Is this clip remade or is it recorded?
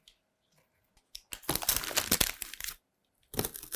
recorded